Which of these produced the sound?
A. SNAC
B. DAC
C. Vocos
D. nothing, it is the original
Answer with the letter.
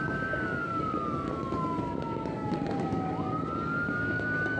B